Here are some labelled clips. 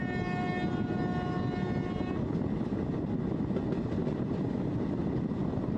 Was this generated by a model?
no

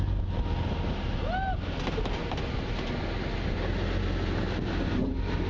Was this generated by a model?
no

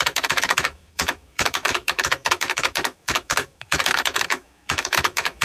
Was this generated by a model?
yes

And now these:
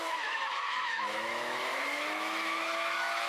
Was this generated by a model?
yes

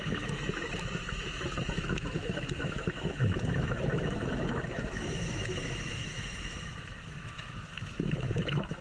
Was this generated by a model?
yes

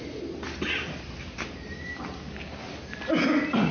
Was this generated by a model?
no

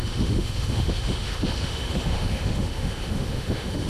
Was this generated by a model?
yes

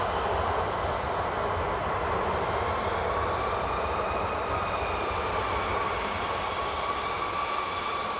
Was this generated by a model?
no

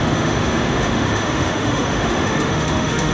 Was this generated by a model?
yes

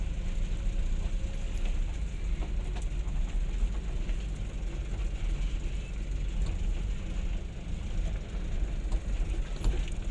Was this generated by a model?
no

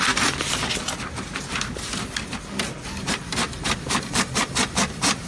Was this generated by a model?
no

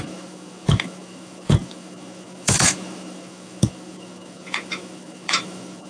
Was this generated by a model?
yes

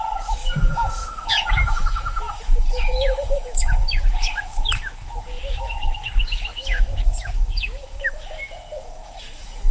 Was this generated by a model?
yes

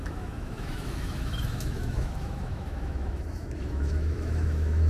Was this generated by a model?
yes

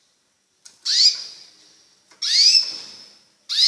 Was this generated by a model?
no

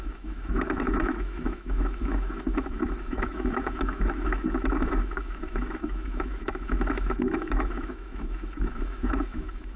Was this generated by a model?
yes